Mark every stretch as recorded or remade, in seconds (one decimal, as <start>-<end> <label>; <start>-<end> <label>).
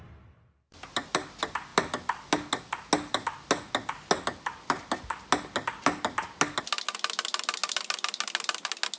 0.0-9.0 recorded